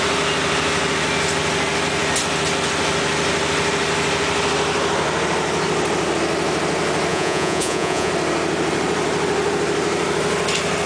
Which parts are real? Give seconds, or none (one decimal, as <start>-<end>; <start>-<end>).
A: 0.0-7.1; 8.1-10.9